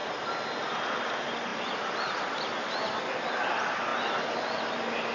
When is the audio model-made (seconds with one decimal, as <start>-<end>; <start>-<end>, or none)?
none